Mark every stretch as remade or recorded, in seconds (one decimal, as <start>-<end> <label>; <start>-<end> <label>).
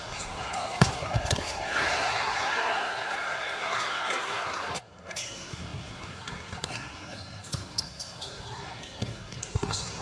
0.0-10.0 remade